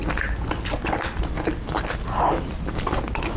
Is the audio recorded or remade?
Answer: recorded